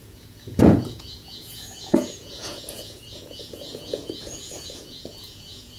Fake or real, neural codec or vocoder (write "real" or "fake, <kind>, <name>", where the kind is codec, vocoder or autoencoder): fake, vocoder, Vocos